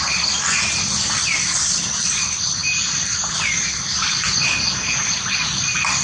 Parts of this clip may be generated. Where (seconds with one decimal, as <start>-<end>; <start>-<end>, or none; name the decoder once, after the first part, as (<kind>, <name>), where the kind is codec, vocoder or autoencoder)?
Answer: none